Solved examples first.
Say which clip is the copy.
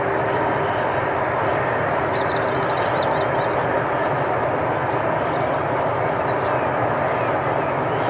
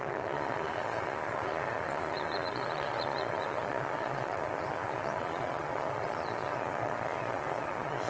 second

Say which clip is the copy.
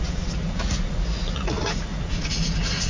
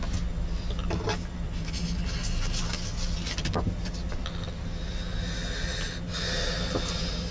first